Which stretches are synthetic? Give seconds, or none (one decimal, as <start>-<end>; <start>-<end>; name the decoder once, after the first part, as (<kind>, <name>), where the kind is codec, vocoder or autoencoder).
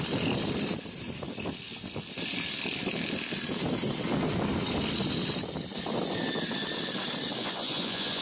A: 7.4-8.2 (vocoder, Vocos)